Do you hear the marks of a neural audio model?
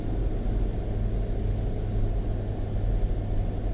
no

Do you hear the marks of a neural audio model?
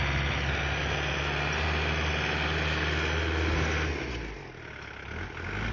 no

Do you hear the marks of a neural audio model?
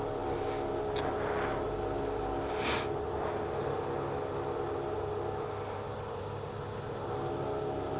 no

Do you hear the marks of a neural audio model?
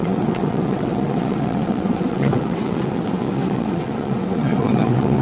yes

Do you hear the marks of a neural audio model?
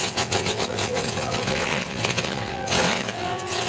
yes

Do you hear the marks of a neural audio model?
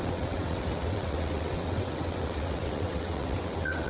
yes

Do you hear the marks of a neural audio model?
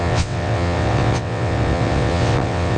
yes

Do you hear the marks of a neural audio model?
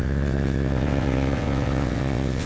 yes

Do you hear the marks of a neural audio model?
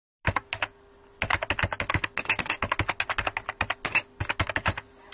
no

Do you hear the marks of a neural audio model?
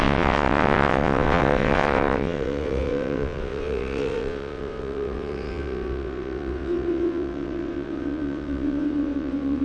yes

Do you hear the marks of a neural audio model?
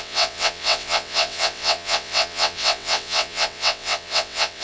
yes